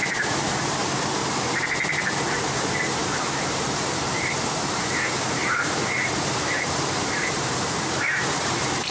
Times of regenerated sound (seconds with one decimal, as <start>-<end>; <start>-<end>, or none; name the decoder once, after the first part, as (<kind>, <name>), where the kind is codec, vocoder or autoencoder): 0.0-8.9 (vocoder, BigVGAN v2)

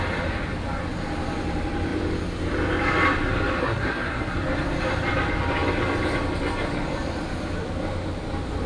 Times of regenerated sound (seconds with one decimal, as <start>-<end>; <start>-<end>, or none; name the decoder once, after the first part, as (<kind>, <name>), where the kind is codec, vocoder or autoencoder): 3.6-4.4 (codec, SNAC)

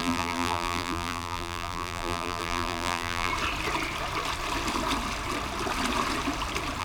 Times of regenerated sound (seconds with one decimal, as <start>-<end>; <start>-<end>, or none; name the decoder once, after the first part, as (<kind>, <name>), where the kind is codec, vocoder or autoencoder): 0.0-3.3 (vocoder, BigVGAN v2)